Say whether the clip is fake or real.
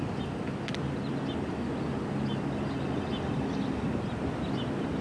real